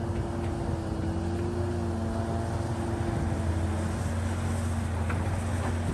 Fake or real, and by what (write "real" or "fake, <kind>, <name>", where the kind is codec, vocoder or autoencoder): real